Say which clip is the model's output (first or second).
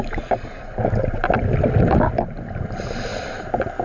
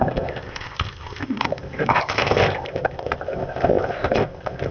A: second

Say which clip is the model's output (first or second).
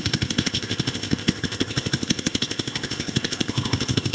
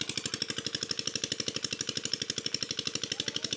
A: first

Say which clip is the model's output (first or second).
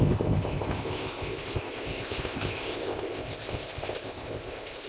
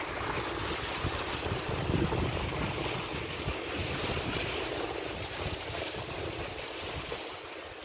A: first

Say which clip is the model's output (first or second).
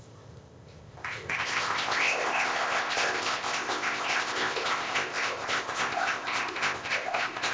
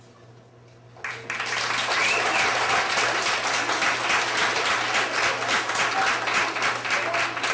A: first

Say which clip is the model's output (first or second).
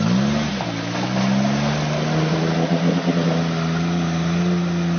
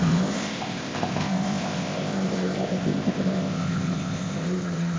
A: second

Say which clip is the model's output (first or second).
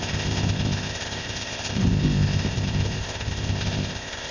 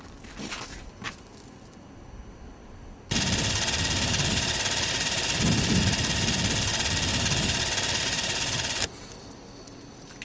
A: first